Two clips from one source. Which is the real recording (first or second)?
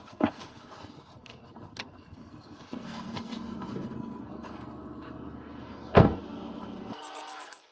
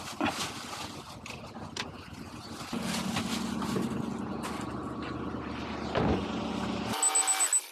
second